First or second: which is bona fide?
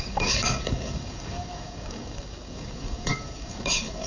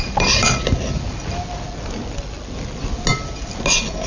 second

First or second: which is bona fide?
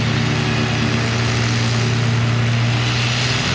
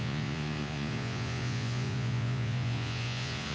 first